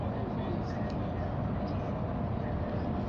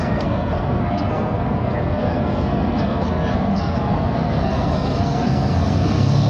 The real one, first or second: first